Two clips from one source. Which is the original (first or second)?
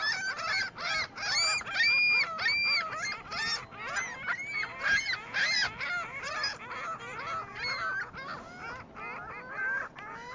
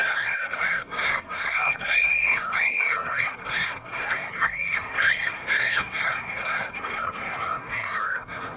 first